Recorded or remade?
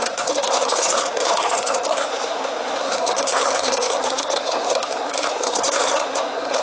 remade